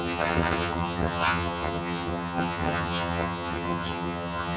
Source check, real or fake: fake